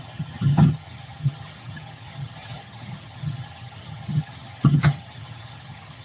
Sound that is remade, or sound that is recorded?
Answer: remade